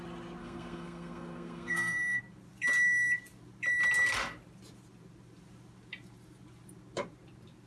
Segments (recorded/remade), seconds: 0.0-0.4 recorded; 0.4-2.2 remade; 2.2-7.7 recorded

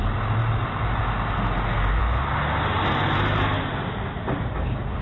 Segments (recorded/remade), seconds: 0.0-0.4 recorded; 0.4-1.0 remade; 1.0-5.0 recorded

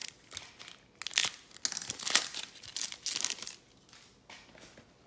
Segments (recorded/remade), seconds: 0.0-5.1 recorded